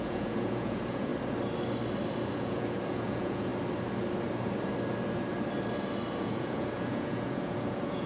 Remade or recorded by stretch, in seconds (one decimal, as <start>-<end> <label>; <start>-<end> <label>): 0.0-1.1 remade; 1.1-2.3 recorded; 2.3-3.5 remade; 3.5-6.2 recorded; 6.2-8.1 remade